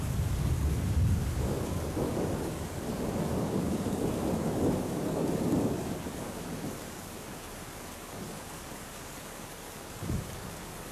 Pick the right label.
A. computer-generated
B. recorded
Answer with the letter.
A